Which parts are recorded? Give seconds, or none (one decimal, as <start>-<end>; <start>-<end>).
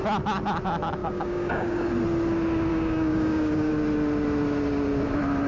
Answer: 0.0-1.0; 1.9-2.7; 3.7-5.5